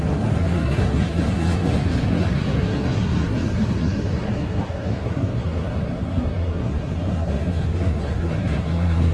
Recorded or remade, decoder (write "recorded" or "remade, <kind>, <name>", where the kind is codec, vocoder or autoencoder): remade, codec, SNAC